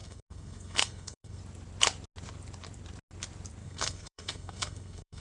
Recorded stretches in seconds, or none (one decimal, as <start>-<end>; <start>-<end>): 1.4-3.6